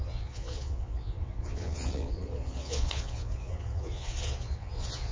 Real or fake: fake